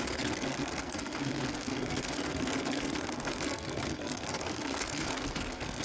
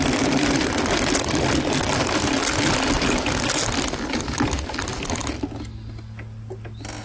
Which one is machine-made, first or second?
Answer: first